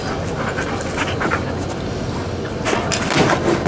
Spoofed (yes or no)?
no